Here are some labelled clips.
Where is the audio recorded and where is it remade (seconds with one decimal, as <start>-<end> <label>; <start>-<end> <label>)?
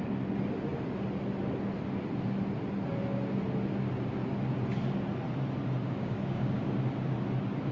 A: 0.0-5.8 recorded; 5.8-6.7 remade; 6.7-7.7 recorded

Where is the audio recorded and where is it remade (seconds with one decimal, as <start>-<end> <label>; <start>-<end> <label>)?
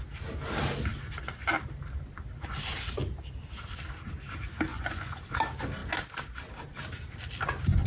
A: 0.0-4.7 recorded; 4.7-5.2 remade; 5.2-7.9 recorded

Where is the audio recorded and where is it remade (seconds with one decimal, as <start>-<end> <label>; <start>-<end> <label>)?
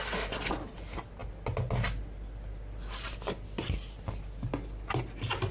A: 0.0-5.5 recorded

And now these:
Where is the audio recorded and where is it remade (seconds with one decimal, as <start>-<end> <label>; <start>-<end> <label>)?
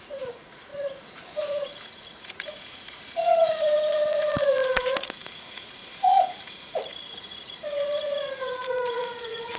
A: 0.0-9.6 remade